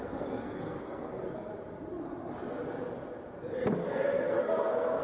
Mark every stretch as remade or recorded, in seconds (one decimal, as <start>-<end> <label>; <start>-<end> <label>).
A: 0.0-1.5 remade; 1.5-3.8 recorded; 3.8-5.0 remade